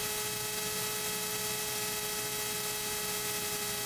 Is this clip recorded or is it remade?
recorded